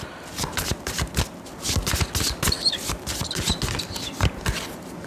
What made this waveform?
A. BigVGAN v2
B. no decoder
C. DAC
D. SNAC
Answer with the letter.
B